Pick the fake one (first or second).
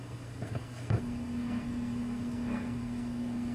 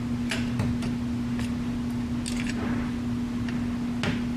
first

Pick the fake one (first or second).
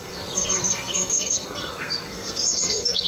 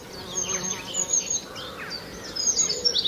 first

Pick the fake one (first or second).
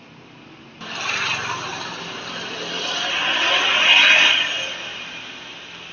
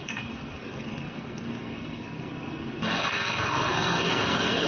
second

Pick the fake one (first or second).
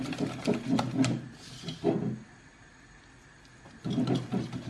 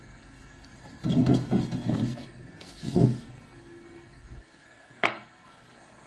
second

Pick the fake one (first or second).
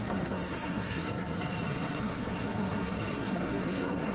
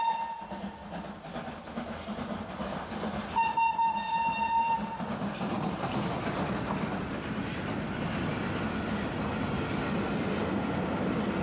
first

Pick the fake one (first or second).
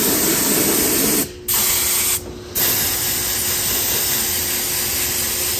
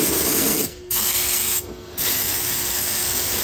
second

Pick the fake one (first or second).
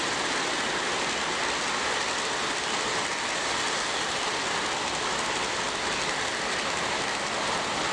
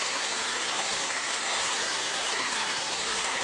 second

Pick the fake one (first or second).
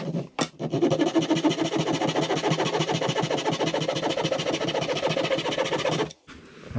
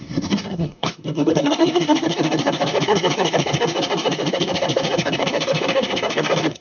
second